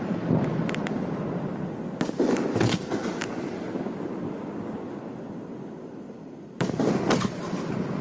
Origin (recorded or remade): recorded